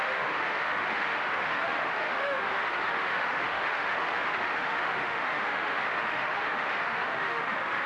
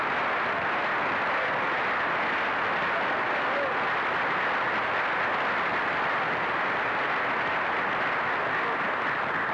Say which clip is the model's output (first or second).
first